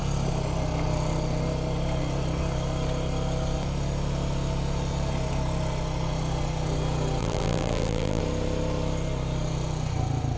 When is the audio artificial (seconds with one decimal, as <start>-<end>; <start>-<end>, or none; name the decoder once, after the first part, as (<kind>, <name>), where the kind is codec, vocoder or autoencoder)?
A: 7.2-8.2 (vocoder, BigVGAN v2)